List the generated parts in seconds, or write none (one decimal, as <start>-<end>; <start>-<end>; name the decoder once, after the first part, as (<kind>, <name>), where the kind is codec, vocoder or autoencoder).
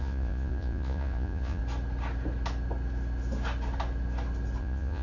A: 0.0-1.6 (vocoder, Vocos); 4.6-5.0